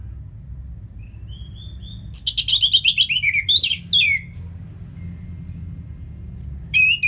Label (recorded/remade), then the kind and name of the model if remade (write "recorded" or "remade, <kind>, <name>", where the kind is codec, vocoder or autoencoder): recorded